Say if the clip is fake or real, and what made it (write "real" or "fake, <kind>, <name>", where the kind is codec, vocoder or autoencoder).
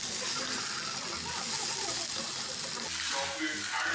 real